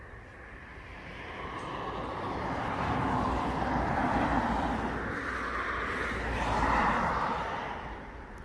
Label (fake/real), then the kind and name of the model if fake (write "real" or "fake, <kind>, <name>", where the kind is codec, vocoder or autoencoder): real